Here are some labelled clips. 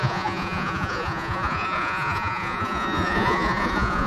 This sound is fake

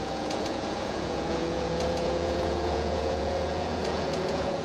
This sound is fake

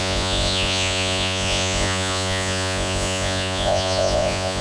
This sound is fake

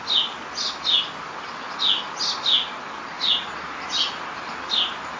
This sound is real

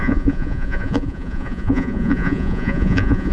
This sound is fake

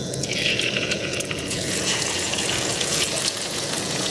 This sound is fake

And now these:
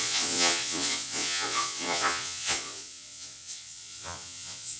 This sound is fake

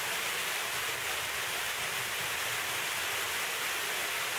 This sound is real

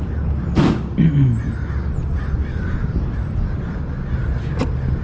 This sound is real